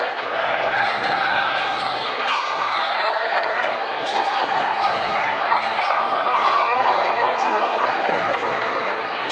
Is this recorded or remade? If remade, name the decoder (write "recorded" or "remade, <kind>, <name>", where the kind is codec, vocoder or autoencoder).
remade, codec, SNAC